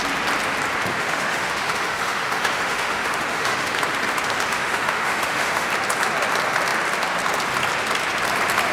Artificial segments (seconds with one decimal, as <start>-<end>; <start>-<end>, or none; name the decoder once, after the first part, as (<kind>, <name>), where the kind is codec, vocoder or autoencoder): 0.9-3.8 (autoencoder, DAC-VAE); 4.5-5.7